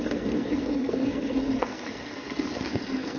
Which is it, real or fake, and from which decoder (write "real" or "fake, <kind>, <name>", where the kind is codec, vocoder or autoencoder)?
fake, codec, SNAC